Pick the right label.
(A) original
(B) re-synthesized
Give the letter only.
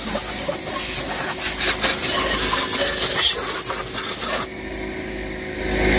A